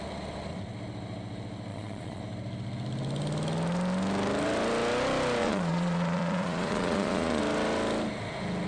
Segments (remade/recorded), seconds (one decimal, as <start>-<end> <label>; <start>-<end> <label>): 0.0-1.7 recorded; 1.7-2.2 remade; 2.2-5.4 recorded; 5.4-7.4 remade; 7.4-8.7 recorded